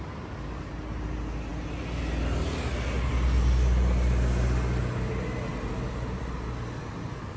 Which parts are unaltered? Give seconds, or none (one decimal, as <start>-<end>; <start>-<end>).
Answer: 0.0-7.4